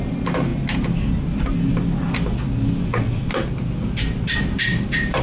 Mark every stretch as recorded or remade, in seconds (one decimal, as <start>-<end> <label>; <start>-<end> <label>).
0.0-5.2 recorded